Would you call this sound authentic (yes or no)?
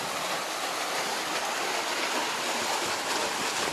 yes